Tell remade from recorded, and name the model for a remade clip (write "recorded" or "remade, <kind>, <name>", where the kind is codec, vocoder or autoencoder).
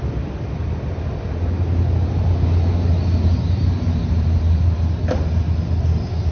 recorded